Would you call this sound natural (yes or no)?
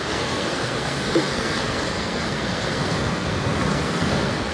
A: no